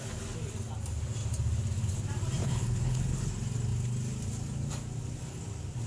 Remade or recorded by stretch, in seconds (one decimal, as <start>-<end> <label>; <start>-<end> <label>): 0.0-2.4 recorded; 2.4-3.3 remade; 3.3-5.9 recorded